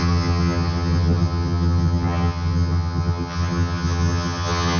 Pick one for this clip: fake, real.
fake